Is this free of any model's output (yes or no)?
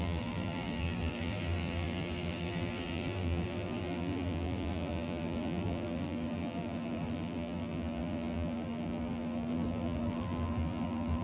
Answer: no